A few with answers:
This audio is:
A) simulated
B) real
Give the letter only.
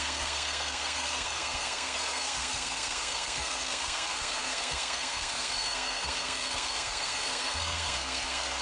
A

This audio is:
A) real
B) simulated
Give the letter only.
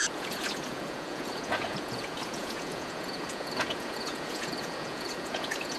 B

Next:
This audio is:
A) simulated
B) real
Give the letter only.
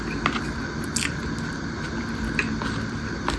B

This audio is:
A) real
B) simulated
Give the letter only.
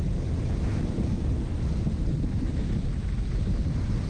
B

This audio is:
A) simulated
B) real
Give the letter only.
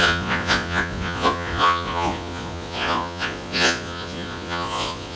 A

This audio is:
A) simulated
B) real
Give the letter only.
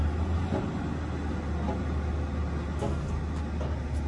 B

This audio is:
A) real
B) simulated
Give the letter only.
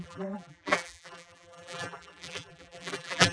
B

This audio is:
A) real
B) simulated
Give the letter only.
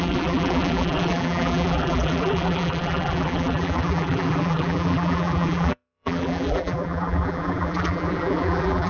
B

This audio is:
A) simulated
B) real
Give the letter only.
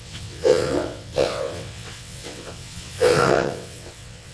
A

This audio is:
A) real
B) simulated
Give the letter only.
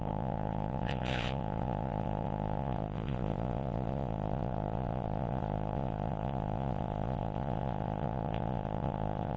B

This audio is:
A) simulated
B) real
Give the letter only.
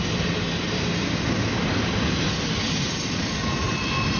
B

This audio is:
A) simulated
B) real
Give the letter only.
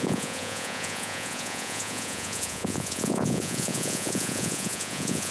A